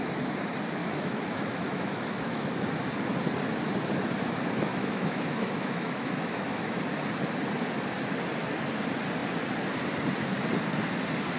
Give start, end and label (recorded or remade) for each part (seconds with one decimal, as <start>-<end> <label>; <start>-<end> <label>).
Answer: 0.0-0.8 recorded; 0.8-2.6 remade; 2.6-4.7 recorded; 4.7-6.8 remade; 6.8-11.4 recorded